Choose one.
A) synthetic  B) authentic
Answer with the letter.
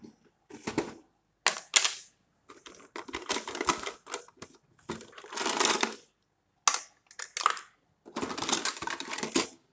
B